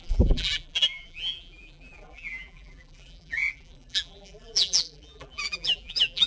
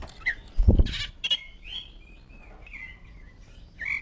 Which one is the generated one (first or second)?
first